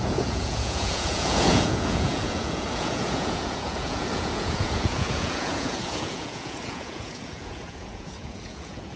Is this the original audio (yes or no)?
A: no